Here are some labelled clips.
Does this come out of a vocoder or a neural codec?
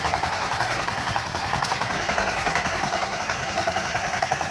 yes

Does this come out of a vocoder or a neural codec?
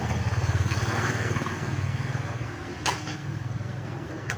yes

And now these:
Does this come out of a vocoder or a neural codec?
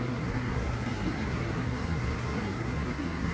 yes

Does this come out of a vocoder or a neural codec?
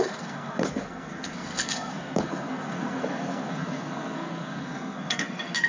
yes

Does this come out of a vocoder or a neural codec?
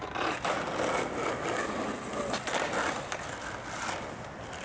no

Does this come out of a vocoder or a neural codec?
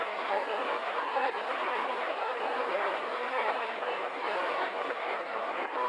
yes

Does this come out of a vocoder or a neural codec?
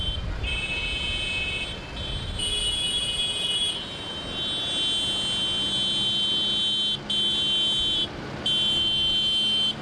no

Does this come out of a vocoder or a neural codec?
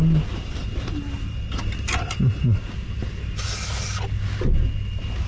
no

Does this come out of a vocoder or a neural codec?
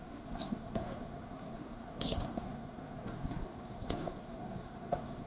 yes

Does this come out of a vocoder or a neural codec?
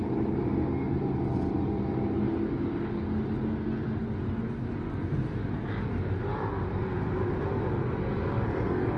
no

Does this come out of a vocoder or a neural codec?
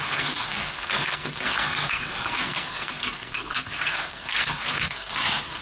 yes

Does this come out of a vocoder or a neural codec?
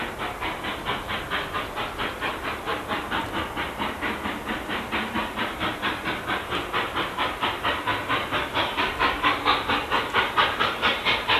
no